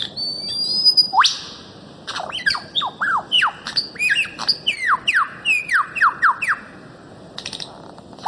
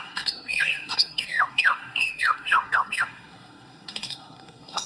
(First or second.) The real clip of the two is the first